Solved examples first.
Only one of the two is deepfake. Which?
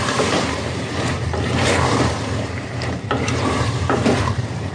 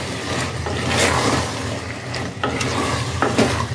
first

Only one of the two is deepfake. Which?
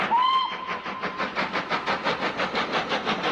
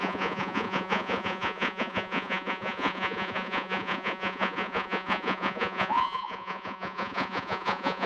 second